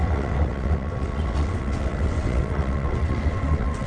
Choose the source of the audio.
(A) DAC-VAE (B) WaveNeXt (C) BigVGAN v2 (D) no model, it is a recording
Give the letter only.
B